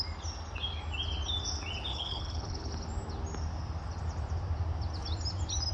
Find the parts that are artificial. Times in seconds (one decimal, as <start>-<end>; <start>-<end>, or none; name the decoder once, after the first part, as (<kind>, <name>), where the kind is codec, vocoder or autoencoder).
1.9-2.7 (codec, HILCodec)